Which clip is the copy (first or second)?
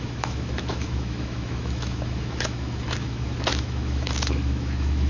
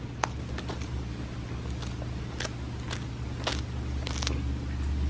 first